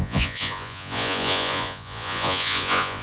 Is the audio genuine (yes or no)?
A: no